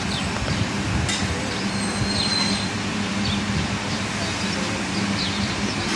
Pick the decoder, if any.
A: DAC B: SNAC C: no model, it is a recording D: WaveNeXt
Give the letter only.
C